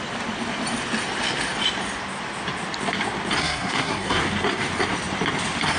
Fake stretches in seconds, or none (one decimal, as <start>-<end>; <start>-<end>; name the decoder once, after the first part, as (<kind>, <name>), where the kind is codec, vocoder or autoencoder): 3.4-4.2 (codec, SNAC)